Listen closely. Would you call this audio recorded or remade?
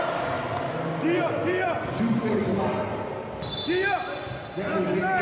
recorded